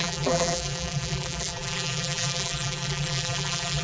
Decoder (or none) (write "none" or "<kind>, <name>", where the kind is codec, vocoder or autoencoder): vocoder, BigVGAN v2